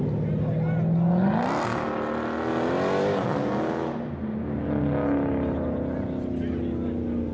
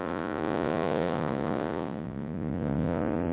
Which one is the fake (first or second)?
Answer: second